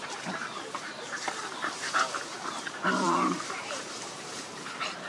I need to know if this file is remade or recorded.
remade